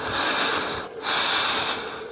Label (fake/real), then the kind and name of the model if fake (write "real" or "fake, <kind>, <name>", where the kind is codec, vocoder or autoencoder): real